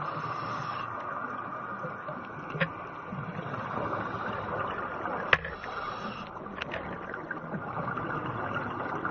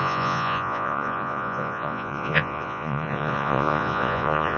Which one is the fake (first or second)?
second